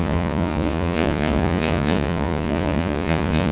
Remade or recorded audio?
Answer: remade